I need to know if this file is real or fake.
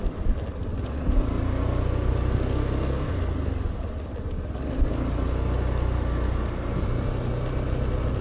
real